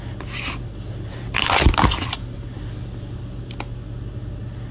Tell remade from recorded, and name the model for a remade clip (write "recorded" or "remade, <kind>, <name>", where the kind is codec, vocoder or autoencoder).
recorded